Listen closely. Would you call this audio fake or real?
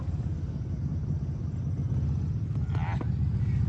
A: real